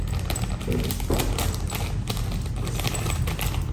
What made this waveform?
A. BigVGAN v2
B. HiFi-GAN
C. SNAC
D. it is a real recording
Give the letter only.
D